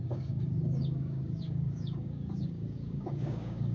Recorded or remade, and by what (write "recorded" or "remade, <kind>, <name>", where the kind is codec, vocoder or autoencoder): remade, codec, DAC